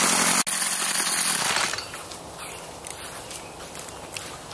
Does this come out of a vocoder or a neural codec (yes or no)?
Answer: no